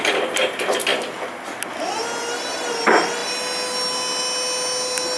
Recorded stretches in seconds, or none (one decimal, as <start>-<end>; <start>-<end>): 0.0-5.2